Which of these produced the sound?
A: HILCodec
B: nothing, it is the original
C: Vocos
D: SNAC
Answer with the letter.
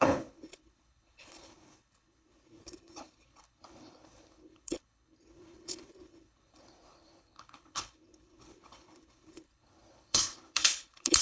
A